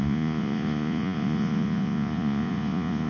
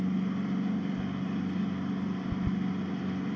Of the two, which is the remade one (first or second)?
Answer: first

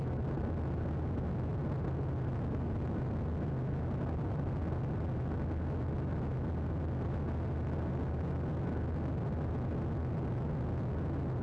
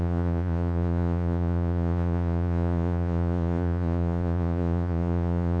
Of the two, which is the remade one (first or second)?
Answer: second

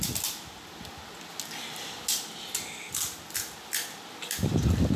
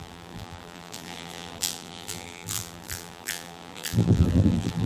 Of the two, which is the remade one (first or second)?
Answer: second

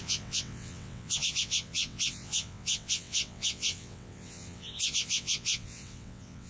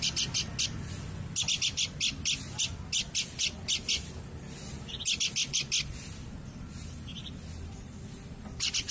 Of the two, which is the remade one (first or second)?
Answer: first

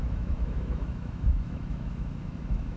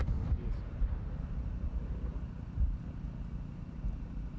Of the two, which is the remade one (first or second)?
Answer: first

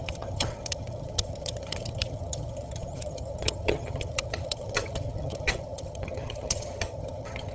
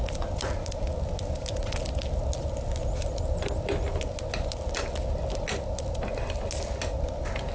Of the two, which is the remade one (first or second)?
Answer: first